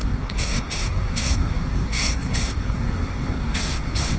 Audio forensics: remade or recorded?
remade